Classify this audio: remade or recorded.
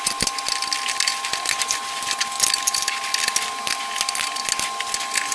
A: recorded